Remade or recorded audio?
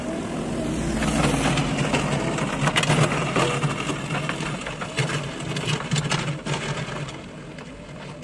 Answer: recorded